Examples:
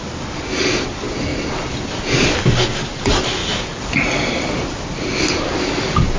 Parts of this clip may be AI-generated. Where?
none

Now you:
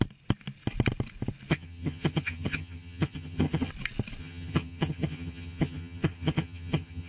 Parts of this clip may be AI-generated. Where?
1.5-3.7 (vocoder, HiFi-GAN); 4.2-7.1